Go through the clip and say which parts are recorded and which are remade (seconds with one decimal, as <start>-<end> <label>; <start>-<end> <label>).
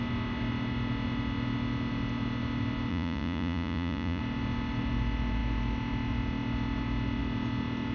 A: 0.0-2.9 recorded; 2.9-4.2 remade; 4.2-7.9 recorded